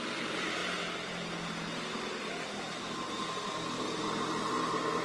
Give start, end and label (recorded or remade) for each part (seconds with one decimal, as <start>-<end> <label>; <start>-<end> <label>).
0.0-5.0 recorded